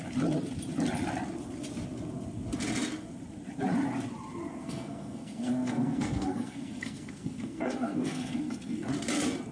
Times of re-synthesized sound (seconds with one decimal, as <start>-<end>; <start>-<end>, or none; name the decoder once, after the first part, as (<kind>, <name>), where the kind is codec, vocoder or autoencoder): 4.6-8.9 (codec, SNAC)